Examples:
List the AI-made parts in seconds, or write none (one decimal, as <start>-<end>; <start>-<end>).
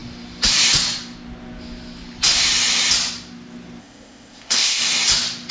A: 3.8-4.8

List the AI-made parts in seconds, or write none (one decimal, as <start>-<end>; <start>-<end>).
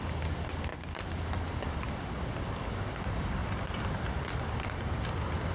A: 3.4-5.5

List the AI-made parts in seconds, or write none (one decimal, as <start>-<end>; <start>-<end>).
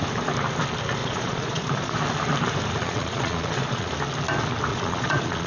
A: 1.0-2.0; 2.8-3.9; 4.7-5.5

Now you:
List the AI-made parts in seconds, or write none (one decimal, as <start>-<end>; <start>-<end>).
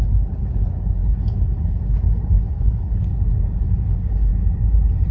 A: 0.0-3.1; 3.6-4.3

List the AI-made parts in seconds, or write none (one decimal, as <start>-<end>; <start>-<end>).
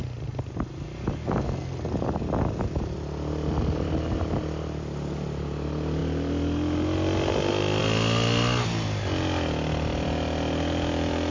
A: none